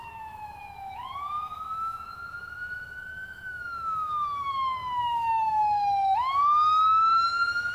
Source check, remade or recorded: remade